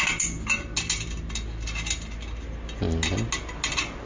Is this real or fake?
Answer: real